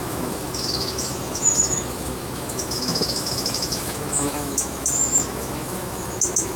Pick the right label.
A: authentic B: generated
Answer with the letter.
B